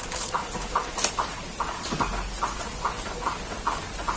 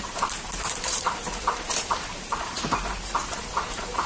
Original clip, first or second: first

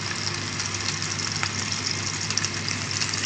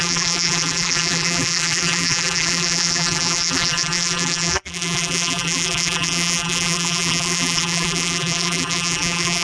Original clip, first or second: first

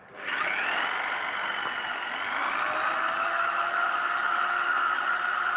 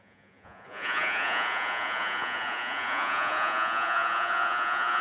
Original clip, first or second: first